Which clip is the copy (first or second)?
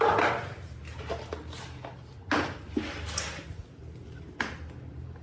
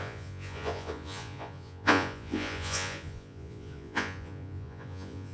second